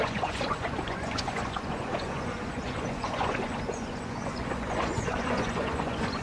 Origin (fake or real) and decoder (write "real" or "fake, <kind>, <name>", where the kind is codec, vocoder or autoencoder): fake, vocoder, Vocos